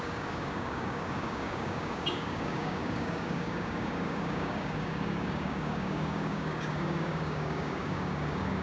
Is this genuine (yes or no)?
no